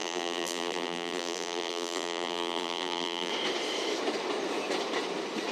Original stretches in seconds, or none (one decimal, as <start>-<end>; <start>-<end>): 3.3-5.5